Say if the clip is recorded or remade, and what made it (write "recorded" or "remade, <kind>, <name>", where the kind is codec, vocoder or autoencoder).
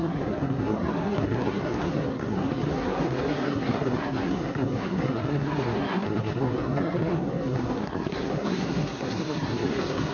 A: remade, codec, SNAC